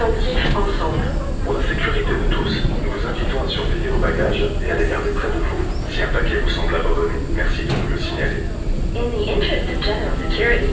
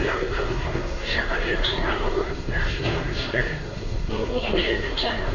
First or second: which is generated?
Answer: second